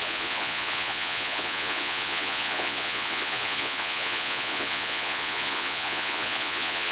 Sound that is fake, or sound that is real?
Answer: fake